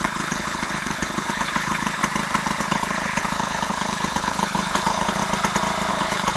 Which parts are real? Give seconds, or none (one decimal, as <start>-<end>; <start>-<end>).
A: 2.0-2.6; 5.2-5.9